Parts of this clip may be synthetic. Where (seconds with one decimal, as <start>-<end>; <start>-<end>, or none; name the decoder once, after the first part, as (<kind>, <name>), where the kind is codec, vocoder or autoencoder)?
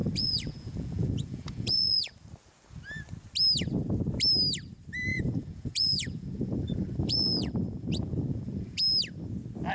0.0-2.1 (vocoder, Vocos); 5.1-8.8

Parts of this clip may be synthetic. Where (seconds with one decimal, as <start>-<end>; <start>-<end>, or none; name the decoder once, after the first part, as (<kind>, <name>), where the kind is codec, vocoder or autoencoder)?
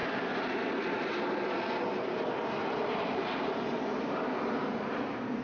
2.6-5.4 (vocoder, BigVGAN v2)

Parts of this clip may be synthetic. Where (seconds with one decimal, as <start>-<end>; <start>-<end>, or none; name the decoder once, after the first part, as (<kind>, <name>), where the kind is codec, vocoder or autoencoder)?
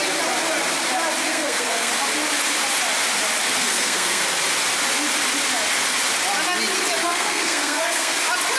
1.3-1.9 (codec, SNAC); 3.6-4.2; 7.0-8.1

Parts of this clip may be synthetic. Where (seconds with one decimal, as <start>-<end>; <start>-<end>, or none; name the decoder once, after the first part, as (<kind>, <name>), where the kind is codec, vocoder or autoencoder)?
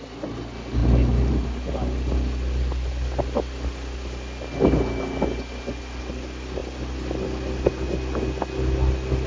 none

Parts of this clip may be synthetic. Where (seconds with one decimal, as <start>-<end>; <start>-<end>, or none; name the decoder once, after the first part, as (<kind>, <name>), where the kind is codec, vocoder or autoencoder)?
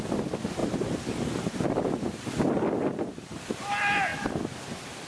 none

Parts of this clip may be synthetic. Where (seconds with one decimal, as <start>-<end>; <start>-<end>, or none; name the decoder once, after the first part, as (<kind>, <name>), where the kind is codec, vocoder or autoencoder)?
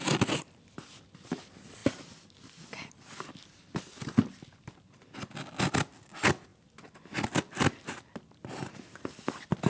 none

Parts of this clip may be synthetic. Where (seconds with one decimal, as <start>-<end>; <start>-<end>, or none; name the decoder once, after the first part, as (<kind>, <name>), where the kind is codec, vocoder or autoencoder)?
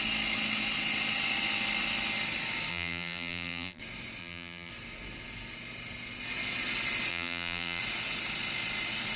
2.7-3.8 (vocoder, BigVGAN v2); 4.2-4.7; 7.1-7.8